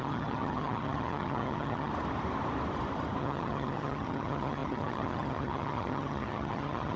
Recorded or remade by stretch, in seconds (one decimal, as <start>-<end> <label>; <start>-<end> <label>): 0.0-1.9 remade; 1.9-3.2 recorded; 3.2-7.0 remade